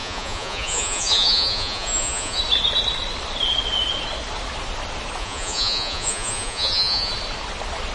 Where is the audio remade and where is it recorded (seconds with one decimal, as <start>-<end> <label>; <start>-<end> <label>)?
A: 0.0-2.4 remade; 2.4-5.2 recorded; 5.2-7.1 remade; 7.1-7.9 recorded